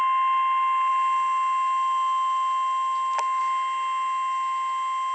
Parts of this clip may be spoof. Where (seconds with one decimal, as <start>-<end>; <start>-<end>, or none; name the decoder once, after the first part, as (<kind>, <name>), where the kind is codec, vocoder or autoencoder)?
none